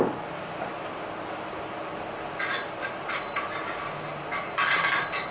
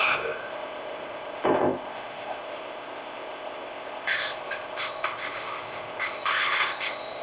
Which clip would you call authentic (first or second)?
first